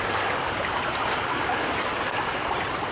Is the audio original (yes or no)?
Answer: yes